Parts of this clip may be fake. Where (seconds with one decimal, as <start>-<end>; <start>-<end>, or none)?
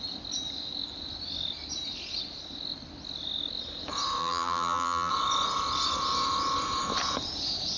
4.2-5.1